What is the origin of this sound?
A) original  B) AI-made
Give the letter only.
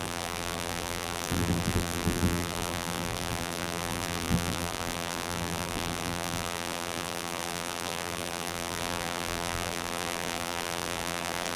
B